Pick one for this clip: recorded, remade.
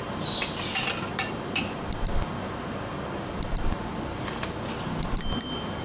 recorded